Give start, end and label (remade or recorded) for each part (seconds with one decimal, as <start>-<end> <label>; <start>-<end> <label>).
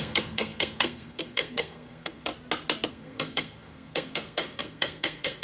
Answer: 0.0-2.3 remade; 2.3-2.9 recorded; 2.9-5.4 remade